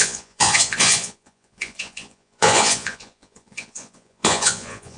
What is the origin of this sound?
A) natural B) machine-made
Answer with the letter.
B